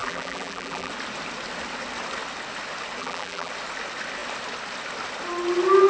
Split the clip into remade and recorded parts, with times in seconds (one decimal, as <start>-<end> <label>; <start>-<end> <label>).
0.0-0.9 remade; 0.9-3.0 recorded; 3.0-3.5 remade; 3.5-5.9 recorded